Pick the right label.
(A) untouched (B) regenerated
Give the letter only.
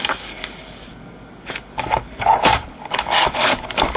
B